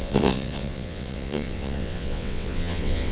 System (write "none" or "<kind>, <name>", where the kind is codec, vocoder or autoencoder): vocoder, WaveNeXt